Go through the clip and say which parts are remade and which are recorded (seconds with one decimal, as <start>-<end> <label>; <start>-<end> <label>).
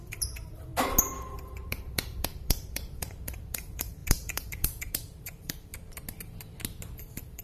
0.0-0.7 remade; 0.7-1.3 recorded; 1.3-5.7 remade; 5.7-7.0 recorded; 7.0-7.4 remade